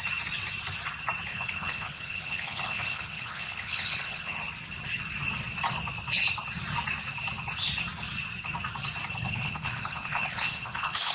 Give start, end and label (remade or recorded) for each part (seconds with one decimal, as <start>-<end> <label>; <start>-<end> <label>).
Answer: 0.0-1.3 recorded; 1.3-4.4 remade; 4.4-9.2 recorded; 9.2-11.1 remade